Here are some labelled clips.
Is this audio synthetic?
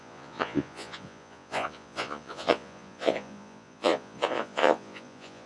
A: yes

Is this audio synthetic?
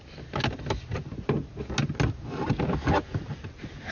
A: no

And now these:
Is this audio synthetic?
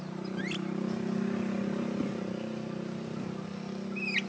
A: no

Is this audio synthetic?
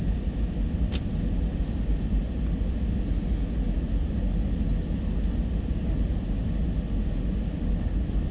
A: no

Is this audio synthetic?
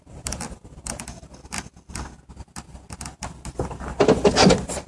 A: no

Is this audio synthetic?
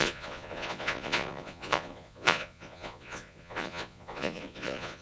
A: yes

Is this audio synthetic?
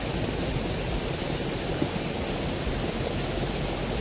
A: no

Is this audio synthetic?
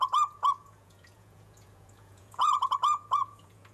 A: yes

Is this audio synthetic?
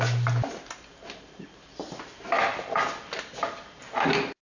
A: no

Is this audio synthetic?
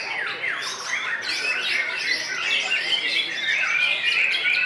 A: no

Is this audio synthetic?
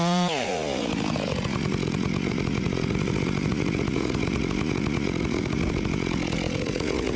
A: yes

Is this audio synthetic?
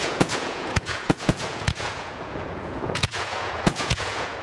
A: yes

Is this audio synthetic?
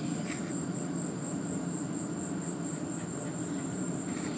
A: no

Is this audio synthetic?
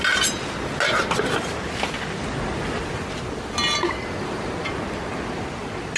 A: no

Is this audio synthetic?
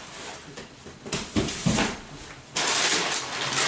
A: no